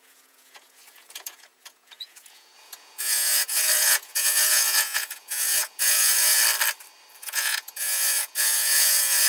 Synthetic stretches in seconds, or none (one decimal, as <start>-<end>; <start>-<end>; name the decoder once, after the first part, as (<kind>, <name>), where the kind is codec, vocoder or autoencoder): 0.0-6.4 (vocoder, Vocos); 7.2-9.3